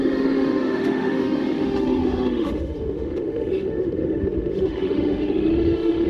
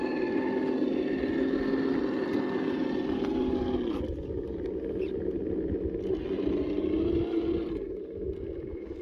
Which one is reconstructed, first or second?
first